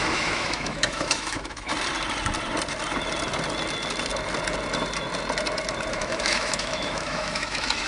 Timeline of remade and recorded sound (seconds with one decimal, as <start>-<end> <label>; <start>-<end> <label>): 0.0-1.7 remade; 1.7-5.9 recorded; 5.9-7.9 remade

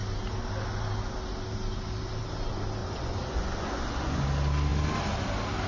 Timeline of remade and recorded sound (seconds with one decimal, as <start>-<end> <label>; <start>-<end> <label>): 0.0-2.8 recorded; 2.8-4.2 remade; 4.2-5.7 recorded